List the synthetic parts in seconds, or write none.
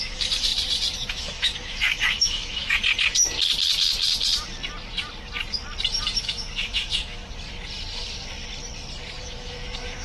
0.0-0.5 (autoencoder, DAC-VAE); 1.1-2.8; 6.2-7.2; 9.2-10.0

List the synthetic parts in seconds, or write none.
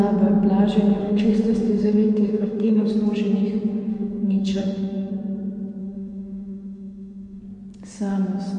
1.0-2.9 (autoencoder, DAC-VAE); 3.9-5.1; 5.8-7.4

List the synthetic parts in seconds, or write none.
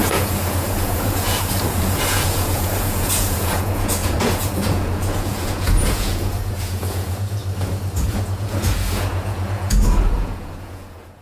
0.0-7.4 (vocoder, Vocos); 8.0-11.2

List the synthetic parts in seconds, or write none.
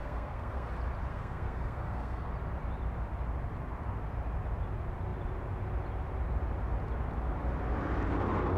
0.0-0.7 (codec, SNAC); 1.1-2.3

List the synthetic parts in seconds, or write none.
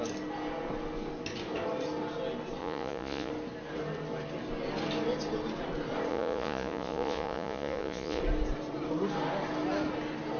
2.6-3.3 (vocoder, Vocos); 6.1-8.2